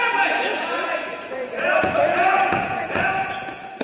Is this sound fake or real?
fake